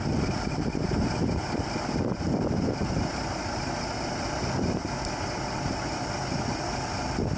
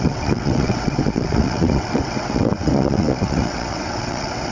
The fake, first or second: second